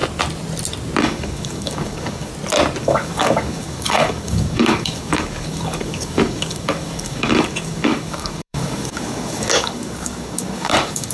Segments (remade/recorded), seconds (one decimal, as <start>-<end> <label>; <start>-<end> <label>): 0.0-1.0 recorded; 1.0-2.3 remade; 2.3-2.8 recorded; 2.8-11.1 remade